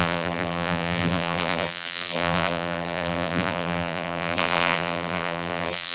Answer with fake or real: fake